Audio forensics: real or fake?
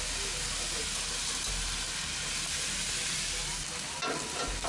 real